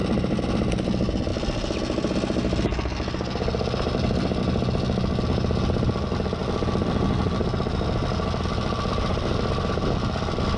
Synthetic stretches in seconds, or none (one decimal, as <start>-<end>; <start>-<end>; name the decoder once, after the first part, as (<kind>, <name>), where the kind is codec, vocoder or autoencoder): none